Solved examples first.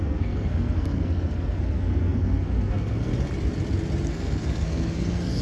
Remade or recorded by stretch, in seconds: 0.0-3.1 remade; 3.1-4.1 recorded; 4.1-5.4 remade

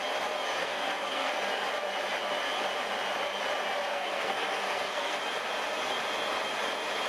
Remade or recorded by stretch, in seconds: 0.0-0.6 recorded; 0.6-1.3 remade; 1.3-3.9 recorded; 3.9-5.2 remade; 5.2-7.1 recorded

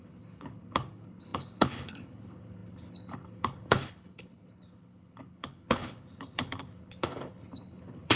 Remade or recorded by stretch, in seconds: 0.0-8.2 remade

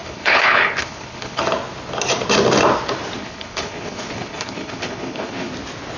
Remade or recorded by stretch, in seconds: 0.0-1.4 remade; 1.4-3.2 recorded; 3.2-5.5 remade; 5.5-6.0 recorded

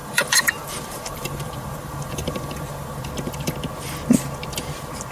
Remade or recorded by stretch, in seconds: 0.0-3.1 remade; 3.1-5.1 recorded